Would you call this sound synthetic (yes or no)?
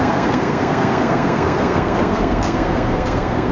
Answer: yes